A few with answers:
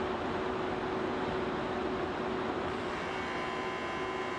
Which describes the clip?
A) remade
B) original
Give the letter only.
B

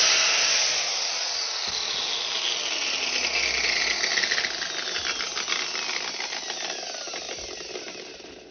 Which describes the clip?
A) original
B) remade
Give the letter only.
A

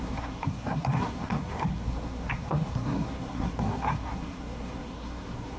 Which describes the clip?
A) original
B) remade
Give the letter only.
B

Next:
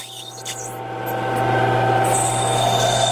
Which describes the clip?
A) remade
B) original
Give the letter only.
B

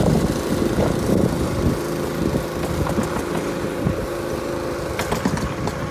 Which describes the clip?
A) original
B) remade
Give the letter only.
A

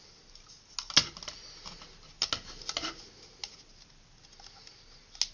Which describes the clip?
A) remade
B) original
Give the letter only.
B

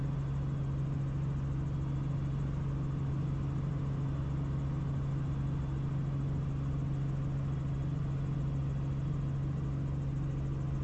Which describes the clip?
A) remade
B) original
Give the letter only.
B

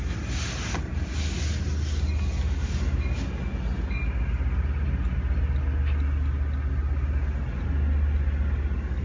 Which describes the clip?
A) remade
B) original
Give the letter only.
B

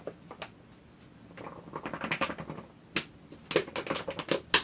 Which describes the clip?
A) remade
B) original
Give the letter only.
B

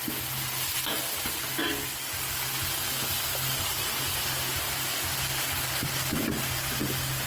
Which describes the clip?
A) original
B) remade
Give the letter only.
A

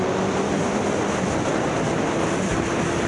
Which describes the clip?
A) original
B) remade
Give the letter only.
A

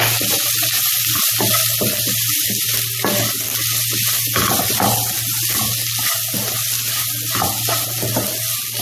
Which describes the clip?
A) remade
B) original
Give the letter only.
B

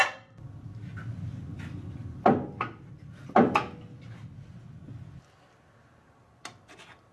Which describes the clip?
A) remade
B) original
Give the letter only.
B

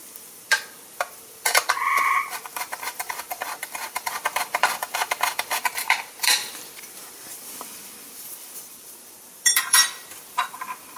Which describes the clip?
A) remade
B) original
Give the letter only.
A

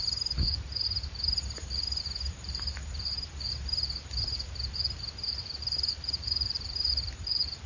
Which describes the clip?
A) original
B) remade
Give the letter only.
B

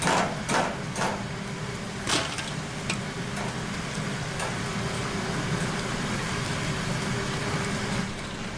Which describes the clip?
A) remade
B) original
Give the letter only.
B